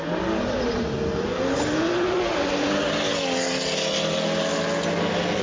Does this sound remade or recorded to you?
recorded